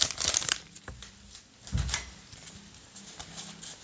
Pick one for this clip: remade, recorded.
recorded